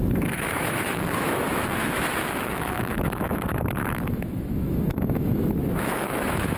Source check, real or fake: fake